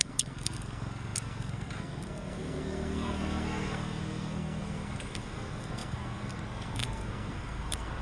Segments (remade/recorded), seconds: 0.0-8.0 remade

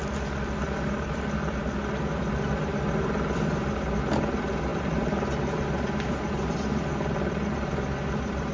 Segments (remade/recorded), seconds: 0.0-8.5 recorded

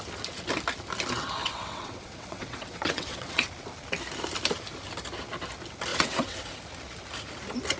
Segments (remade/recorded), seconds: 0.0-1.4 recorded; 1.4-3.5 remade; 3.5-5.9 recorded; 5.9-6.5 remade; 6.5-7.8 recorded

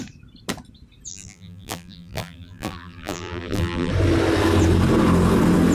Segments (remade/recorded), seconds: 0.0-1.1 recorded; 1.1-3.9 remade; 3.9-5.7 recorded

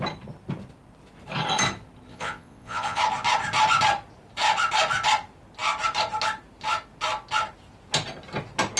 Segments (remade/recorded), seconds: 0.0-2.1 recorded; 2.1-3.0 remade; 3.0-8.8 recorded

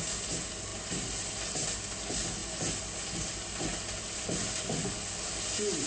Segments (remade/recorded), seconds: 0.0-5.9 recorded

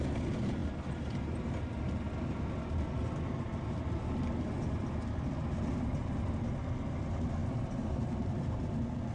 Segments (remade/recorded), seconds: 0.0-7.4 recorded; 7.4-8.6 remade; 8.6-9.1 recorded